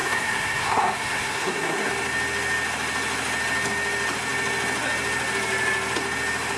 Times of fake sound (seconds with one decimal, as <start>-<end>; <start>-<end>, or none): 0.0-1.9